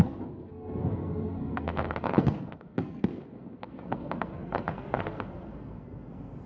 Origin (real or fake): fake